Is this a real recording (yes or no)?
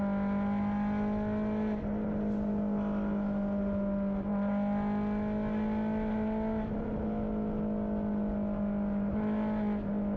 yes